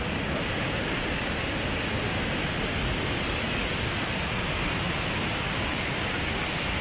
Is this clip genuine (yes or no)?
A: yes